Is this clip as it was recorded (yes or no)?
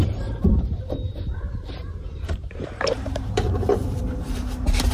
no